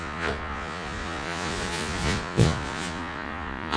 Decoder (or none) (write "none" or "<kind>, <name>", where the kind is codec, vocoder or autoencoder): vocoder, Vocos